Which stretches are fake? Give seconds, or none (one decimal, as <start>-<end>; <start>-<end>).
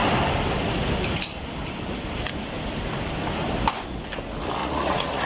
4.6-5.3